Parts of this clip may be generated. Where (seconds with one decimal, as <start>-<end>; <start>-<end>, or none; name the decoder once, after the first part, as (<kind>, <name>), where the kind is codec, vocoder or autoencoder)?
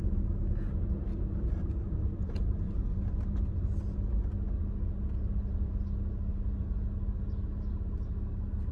1.1-3.1 (vocoder, BigVGAN v2)